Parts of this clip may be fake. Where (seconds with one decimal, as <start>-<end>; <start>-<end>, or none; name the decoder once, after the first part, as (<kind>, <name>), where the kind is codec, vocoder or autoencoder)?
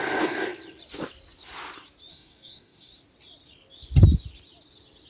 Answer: 0.0-0.5 (codec, DAC); 2.1-2.9